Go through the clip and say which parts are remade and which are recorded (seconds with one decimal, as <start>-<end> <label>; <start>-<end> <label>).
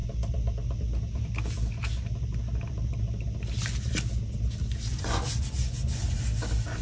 0.0-4.9 recorded; 4.9-6.2 remade; 6.2-6.8 recorded